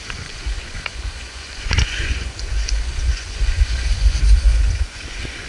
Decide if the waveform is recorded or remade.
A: remade